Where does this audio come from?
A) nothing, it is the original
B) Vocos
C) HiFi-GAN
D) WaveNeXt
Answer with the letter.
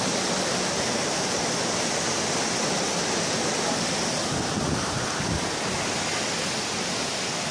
A